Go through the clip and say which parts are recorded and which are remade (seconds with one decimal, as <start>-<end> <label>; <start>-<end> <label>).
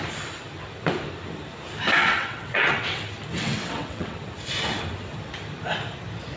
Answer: 0.0-2.0 recorded; 2.0-3.0 remade; 3.0-3.4 recorded; 3.4-4.2 remade; 4.2-6.4 recorded